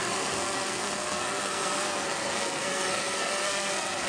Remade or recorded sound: remade